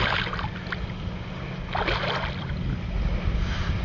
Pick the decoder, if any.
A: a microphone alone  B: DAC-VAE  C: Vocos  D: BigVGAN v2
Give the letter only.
A